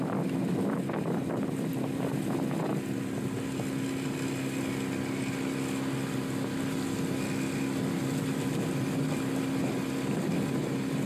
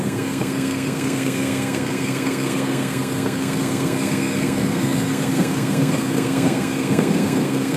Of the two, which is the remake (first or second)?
second